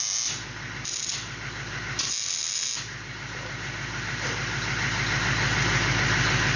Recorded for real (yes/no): yes